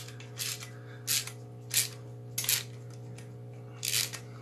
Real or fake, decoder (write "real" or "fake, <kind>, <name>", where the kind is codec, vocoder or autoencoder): real